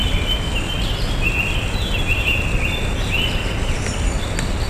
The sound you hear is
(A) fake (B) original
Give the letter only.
B